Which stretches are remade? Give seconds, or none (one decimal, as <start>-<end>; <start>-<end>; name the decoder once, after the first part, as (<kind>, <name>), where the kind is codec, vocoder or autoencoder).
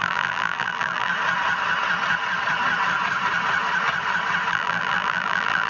0.0-1.1 (vocoder, BigVGAN v2); 4.5-5.7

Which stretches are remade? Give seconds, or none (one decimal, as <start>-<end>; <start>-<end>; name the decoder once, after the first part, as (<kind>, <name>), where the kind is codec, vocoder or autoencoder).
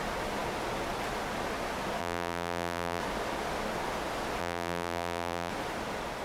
2.0-3.0 (vocoder, BigVGAN v2); 4.4-5.5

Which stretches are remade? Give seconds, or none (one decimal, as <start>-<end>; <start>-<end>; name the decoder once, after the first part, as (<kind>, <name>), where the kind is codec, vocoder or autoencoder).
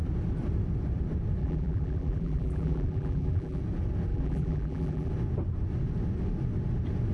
1.4-3.6 (vocoder, BigVGAN v2); 4.1-5.1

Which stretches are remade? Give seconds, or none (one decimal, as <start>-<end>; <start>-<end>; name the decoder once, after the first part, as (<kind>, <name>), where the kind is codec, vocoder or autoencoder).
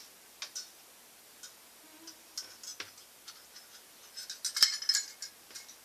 none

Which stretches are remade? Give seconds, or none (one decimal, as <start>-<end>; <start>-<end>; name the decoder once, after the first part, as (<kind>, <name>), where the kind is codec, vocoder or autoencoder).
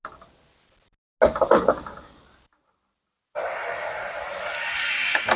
none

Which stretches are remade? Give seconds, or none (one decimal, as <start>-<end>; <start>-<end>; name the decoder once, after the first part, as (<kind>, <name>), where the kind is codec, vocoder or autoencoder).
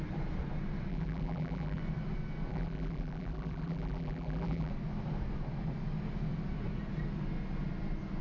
0.9-1.8 (vocoder, BigVGAN v2); 2.5-4.7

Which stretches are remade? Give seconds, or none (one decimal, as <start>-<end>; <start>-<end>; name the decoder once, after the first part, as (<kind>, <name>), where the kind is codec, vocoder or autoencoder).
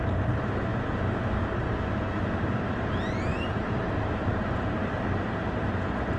0.0-0.7 (vocoder, BigVGAN v2); 2.4-6.2